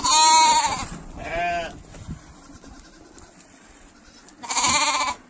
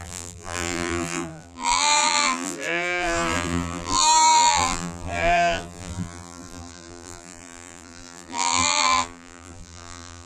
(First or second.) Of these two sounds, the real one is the first